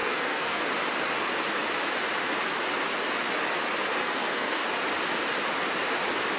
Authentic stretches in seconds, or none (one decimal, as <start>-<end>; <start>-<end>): 0.6-3.9; 4.6-6.4